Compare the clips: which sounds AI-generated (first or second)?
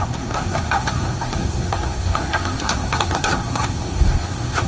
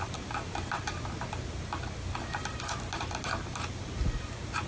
first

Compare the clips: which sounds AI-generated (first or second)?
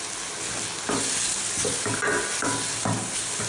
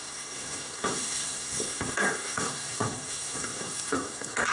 second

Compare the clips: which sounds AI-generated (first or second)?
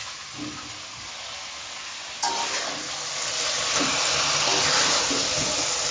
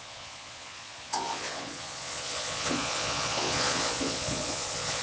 second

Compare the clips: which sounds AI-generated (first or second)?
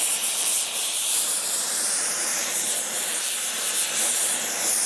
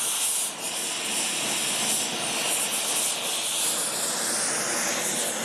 first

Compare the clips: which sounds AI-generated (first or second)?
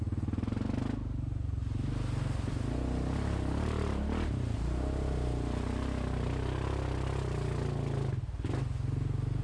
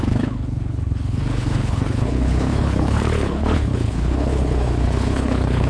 second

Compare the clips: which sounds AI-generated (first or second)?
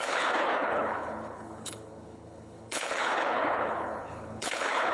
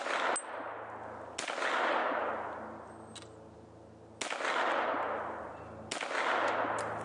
first